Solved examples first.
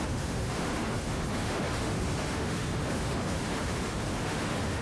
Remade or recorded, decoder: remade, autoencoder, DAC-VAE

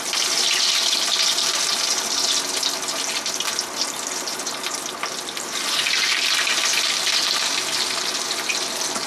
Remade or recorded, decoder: recorded